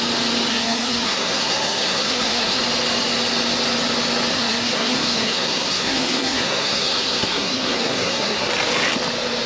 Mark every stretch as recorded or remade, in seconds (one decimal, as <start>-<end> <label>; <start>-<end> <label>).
0.0-0.5 recorded; 0.5-2.6 remade; 2.6-4.3 recorded; 4.3-8.5 remade; 8.5-9.5 recorded